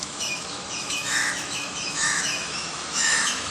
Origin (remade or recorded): remade